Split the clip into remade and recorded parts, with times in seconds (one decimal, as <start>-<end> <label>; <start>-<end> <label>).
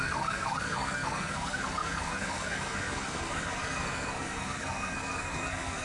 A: 0.0-5.8 remade